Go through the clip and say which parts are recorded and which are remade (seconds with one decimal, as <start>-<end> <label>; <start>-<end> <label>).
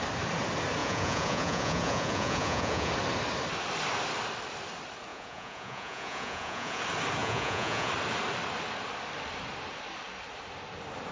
0.0-0.8 recorded; 0.8-2.9 remade; 2.9-5.1 recorded; 5.1-6.8 remade; 6.8-7.2 recorded; 7.2-7.9 remade; 7.9-11.1 recorded